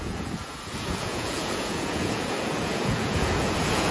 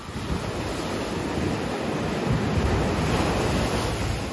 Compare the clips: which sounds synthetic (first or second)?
first